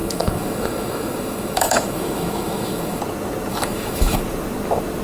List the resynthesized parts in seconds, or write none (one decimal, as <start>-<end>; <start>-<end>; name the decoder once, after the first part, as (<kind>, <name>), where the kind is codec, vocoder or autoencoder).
0.0-3.0 (autoencoder, DAC-VAE); 3.5-4.2